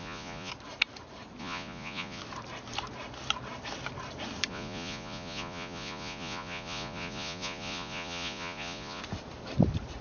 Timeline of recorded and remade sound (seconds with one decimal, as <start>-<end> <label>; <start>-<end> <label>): 0.0-0.5 remade; 0.5-1.4 recorded; 1.4-2.2 remade; 2.2-4.5 recorded; 4.5-9.0 remade; 9.0-10.0 recorded

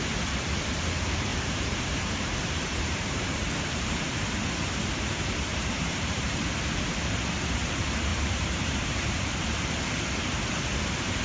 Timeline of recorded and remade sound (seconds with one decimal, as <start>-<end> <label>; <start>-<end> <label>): 0.0-1.3 recorded; 1.3-4.2 remade; 4.2-5.5 recorded; 5.5-6.7 remade; 6.7-8.1 recorded; 8.1-9.3 remade; 9.3-11.2 recorded

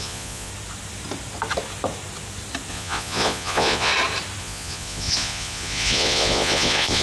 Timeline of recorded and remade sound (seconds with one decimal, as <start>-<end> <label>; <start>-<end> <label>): 0.0-0.5 remade; 0.5-2.7 recorded; 2.7-3.9 remade; 3.9-4.4 recorded; 4.4-7.0 remade

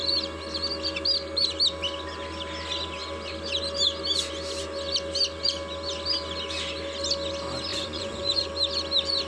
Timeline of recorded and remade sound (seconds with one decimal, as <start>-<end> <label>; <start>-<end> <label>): 0.0-7.7 recorded; 7.7-8.5 remade; 8.5-9.3 recorded